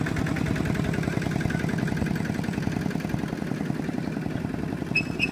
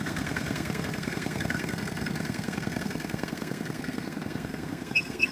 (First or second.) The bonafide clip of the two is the first